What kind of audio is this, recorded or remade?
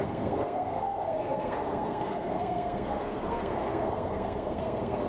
remade